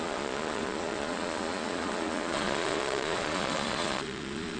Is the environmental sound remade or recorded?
remade